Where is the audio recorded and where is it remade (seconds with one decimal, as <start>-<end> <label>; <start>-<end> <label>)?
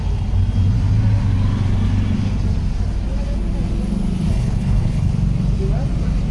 0.0-4.3 recorded; 4.3-5.1 remade; 5.1-6.3 recorded